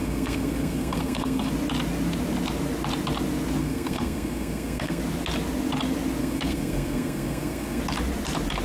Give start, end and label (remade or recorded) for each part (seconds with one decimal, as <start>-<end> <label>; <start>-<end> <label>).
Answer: 0.0-1.5 remade; 1.5-3.6 recorded; 3.6-5.0 remade; 5.0-6.2 recorded; 6.2-7.8 remade; 7.8-8.6 recorded